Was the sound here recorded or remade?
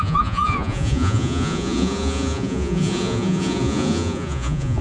remade